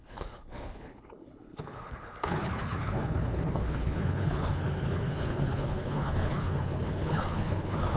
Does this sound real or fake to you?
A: fake